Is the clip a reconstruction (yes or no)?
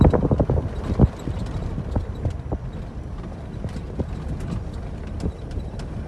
no